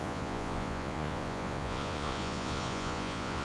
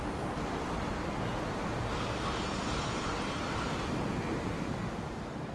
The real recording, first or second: second